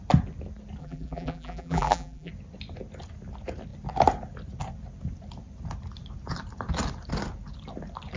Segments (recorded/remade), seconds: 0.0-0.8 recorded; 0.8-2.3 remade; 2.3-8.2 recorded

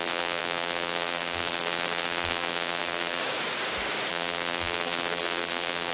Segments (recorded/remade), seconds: 0.0-3.2 remade; 3.2-4.1 recorded; 4.1-5.9 remade

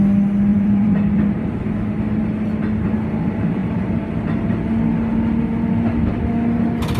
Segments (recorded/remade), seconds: 0.0-0.5 recorded; 0.5-2.2 remade; 2.2-7.0 recorded

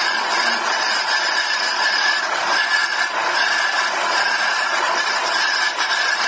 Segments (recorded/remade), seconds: 0.0-2.9 remade; 2.9-3.9 recorded; 3.9-6.3 remade

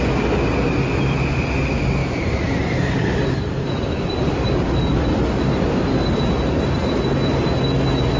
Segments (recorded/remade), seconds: 0.0-2.0 recorded; 2.0-6.9 remade; 6.9-8.2 recorded

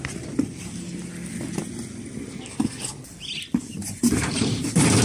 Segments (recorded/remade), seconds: 0.0-3.8 recorded; 3.8-5.0 remade

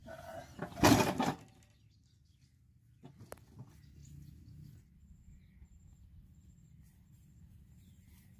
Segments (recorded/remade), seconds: 0.0-8.4 recorded